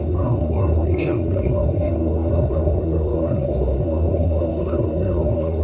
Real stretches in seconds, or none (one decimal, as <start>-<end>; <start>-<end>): none